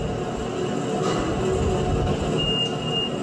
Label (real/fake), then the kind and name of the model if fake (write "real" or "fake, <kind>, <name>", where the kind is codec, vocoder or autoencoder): real